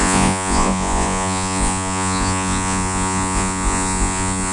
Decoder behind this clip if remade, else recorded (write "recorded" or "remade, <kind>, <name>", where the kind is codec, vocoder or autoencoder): remade, vocoder, Vocos